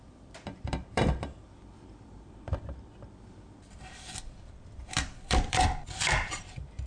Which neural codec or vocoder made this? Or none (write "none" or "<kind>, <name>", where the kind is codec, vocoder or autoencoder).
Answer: vocoder, BigVGAN v2